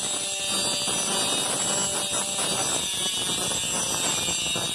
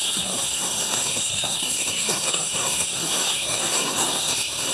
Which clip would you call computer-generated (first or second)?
second